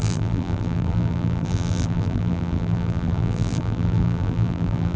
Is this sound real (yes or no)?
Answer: no